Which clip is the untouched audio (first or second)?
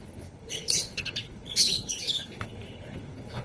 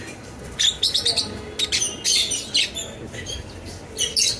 second